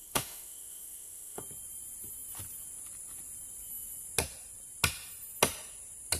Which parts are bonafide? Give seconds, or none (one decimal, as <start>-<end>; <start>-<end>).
1.4-6.2